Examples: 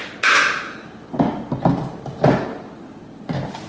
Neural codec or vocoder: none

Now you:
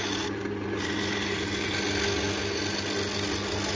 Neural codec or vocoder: none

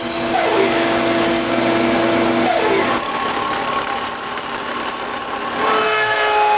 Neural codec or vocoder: none